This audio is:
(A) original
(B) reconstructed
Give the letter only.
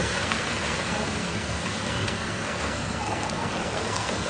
B